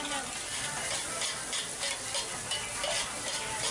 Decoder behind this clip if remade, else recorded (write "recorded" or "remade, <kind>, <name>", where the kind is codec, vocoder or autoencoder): recorded